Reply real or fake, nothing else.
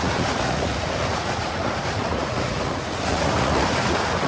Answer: fake